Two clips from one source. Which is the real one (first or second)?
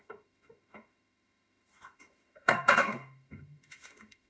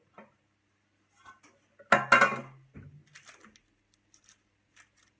second